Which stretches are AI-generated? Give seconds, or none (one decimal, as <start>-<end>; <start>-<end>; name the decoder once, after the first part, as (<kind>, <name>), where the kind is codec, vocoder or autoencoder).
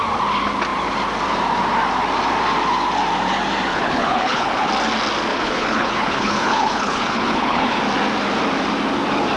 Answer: 3.7-4.7 (codec, HILCodec); 5.3-7.8